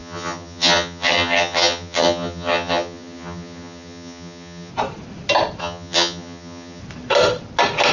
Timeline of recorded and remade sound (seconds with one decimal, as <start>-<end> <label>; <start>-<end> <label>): 0.0-4.7 remade; 4.7-5.6 recorded; 5.6-6.8 remade; 6.8-7.9 recorded

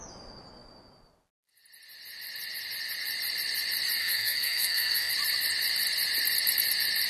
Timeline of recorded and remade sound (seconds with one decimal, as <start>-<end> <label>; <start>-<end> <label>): 0.0-4.0 recorded; 4.0-5.1 remade; 5.1-7.1 recorded

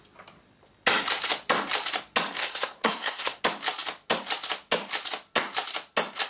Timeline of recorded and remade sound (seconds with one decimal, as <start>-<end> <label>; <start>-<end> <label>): 0.0-2.4 recorded; 2.4-3.4 remade; 3.4-6.3 recorded